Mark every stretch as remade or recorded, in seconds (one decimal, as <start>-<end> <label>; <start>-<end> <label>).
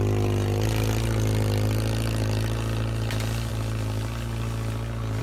0.0-5.2 recorded